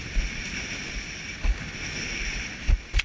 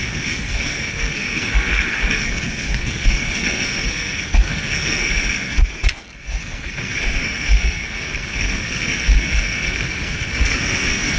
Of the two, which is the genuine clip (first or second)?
first